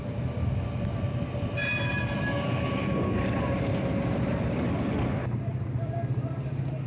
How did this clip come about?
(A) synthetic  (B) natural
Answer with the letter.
B